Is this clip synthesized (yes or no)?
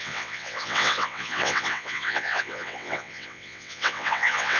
yes